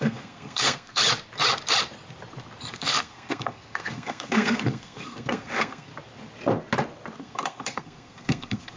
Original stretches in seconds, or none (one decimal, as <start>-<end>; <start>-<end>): 1.0-2.6; 5.9-7.2